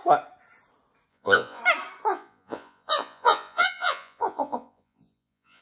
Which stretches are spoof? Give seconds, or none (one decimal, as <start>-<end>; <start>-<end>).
1.1-1.6; 2.1-5.6